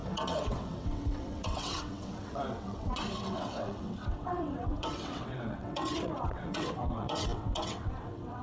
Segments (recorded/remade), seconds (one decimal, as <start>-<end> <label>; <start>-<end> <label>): 0.0-8.4 remade